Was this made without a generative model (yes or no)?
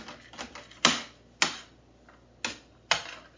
yes